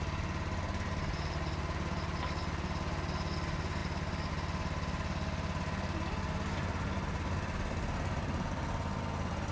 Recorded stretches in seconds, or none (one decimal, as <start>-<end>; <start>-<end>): 0.0-9.5